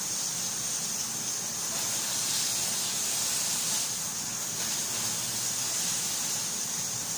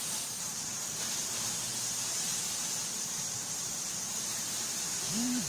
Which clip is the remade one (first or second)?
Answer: second